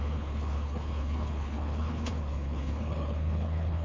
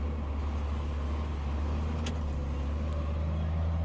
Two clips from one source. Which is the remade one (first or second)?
first